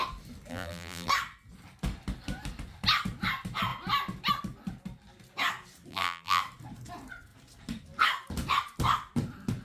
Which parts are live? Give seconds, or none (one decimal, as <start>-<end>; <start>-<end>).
0.0-0.5; 1.1-5.9; 6.4-9.6